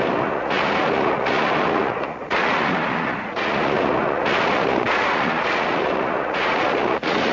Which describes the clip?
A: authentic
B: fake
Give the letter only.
B